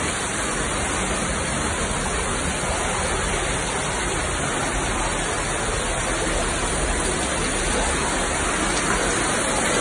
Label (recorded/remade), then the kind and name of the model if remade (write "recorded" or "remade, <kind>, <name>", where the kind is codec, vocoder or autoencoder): recorded